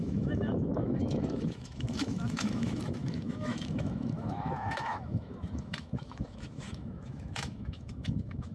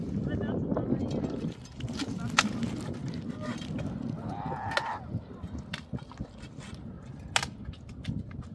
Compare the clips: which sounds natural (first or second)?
second